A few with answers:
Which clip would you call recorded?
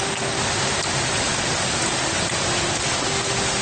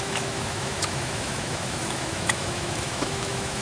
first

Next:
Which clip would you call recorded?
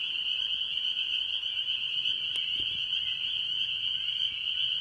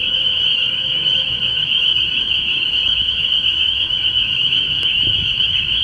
first